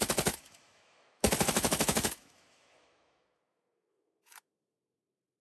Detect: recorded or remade remade